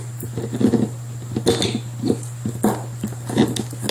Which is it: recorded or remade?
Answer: recorded